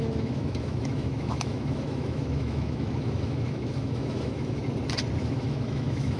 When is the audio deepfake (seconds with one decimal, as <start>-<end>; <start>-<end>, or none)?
0.0-4.6; 5.2-6.2